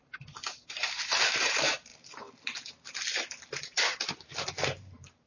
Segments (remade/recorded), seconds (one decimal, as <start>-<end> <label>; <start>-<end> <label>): 0.0-1.9 remade; 1.9-3.6 recorded; 3.6-4.3 remade; 4.3-4.8 recorded; 4.8-5.3 remade